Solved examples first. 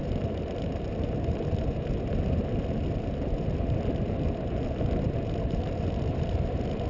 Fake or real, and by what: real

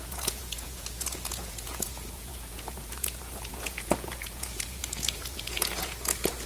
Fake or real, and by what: fake, vocoder, Vocos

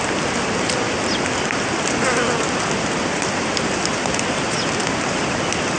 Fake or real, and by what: real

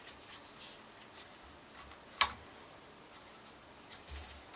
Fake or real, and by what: real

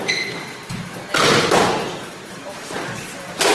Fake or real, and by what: real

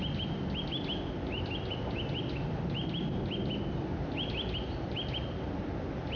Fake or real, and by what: real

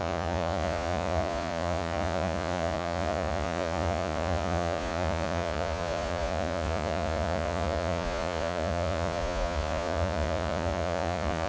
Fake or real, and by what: fake, vocoder, Vocos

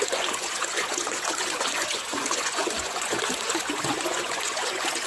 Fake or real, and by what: fake, vocoder, Vocos